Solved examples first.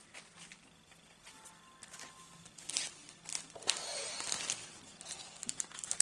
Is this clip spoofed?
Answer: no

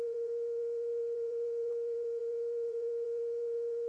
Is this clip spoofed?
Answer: yes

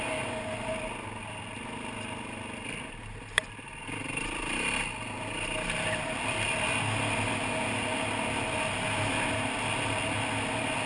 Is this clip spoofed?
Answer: no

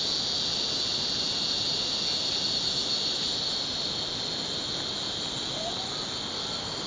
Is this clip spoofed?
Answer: no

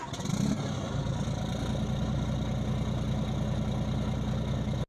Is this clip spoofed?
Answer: no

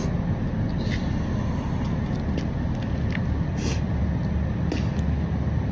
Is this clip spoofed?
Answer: no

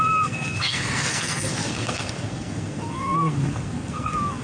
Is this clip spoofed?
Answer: yes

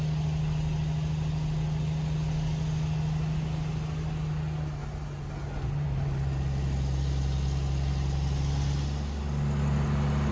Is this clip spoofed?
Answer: no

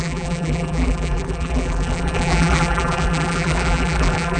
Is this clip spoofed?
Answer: yes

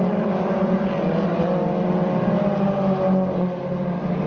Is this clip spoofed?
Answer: no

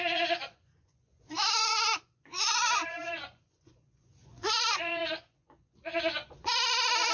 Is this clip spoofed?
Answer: yes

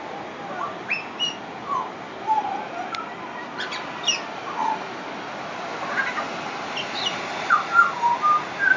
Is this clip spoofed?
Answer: no